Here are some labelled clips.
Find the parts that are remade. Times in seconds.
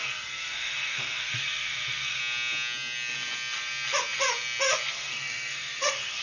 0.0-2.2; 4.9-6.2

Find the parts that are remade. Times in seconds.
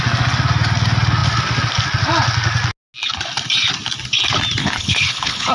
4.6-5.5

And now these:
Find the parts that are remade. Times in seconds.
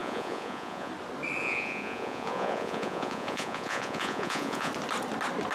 0.0-0.9; 1.4-4.7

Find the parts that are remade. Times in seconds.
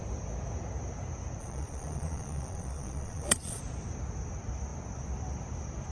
1.4-3.6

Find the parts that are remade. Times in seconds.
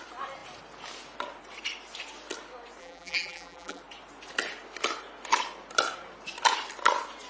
2.8-3.8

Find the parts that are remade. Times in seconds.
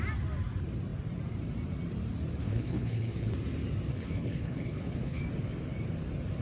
2.4-3.3; 3.9-5.2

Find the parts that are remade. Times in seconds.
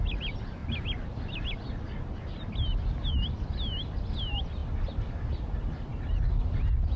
none